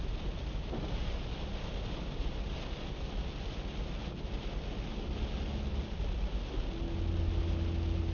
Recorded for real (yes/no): yes